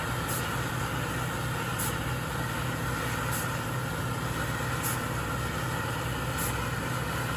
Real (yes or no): yes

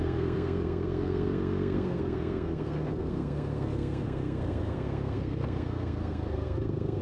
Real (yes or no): no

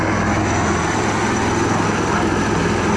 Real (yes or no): yes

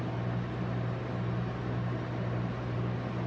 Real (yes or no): yes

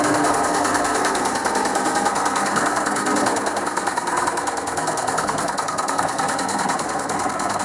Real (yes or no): no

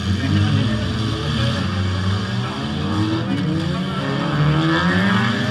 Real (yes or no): yes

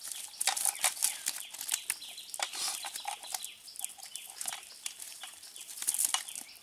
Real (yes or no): yes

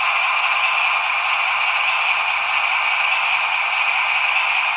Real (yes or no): yes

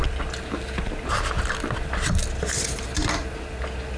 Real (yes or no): yes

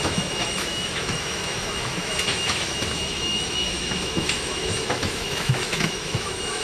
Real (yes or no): no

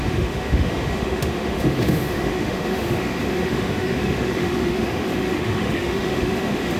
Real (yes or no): no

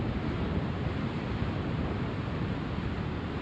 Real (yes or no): yes